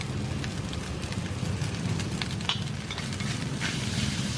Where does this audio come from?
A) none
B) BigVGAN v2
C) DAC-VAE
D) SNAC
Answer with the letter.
A